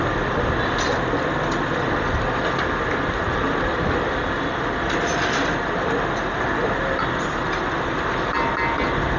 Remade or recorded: recorded